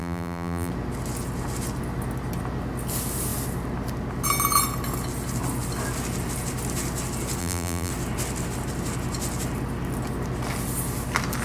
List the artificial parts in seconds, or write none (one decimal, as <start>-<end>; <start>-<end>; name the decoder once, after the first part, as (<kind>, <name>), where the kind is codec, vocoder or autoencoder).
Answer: 0.0-0.7 (vocoder, BigVGAN v2); 7.4-7.9